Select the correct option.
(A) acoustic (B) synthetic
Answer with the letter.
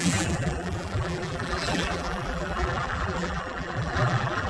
B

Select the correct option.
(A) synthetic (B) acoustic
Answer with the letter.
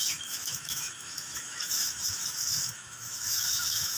A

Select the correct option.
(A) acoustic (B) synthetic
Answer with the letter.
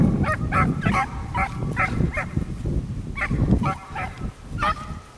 A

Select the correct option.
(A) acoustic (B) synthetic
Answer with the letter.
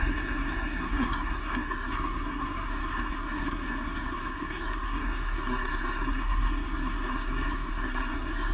B